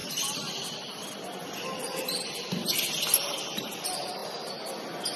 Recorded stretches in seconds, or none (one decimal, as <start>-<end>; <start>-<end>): 0.0-5.2